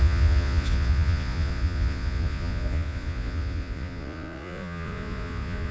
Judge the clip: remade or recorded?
remade